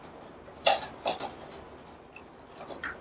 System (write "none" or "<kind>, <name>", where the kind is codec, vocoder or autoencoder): none